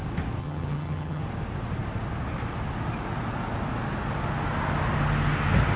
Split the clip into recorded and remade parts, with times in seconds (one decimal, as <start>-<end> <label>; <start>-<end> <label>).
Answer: 0.0-0.4 recorded; 0.4-1.2 remade; 1.2-5.8 recorded